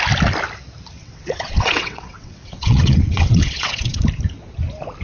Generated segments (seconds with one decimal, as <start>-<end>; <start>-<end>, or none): 1.0-4.0

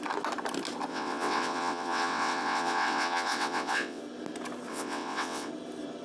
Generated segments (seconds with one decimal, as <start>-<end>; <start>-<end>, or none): 0.9-4.0; 4.7-5.5

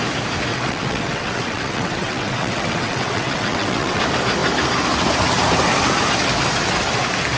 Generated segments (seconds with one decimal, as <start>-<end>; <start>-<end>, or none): 0.5-4.0

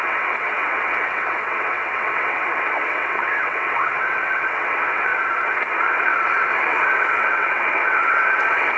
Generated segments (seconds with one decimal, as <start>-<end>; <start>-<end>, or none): 0.0-5.1; 5.8-8.8

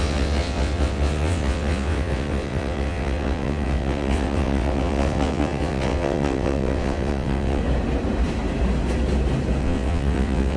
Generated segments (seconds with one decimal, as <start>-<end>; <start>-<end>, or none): 0.0-7.6; 9.6-10.6

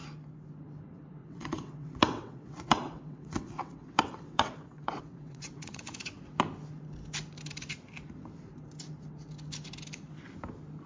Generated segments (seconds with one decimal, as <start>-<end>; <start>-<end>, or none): 1.2-6.2